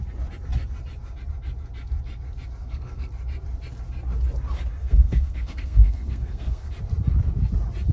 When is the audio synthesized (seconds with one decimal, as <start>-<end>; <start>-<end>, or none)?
2.6-3.1; 4.8-6.7